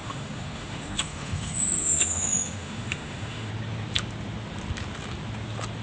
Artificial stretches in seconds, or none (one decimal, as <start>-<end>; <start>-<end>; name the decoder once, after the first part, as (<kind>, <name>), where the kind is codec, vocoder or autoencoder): 0.0-3.5 (autoencoder, DAC-VAE)